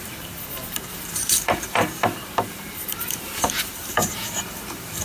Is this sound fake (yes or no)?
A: yes